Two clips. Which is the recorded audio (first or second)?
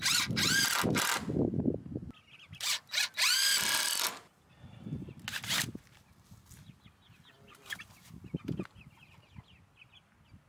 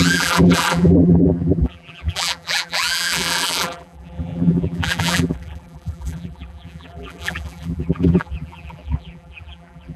first